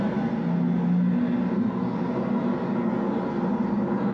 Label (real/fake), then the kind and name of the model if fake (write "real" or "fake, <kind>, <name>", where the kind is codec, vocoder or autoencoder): real